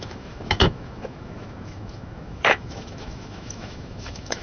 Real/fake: fake